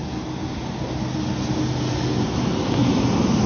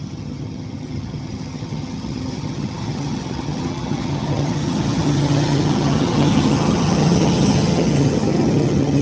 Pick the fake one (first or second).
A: second